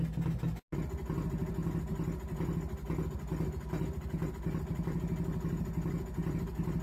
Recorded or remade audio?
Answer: recorded